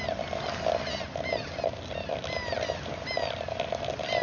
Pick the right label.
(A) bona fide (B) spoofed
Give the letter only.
A